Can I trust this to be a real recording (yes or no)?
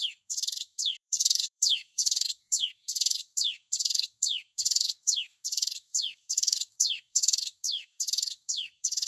no